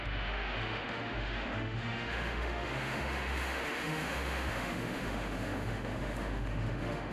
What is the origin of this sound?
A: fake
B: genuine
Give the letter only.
A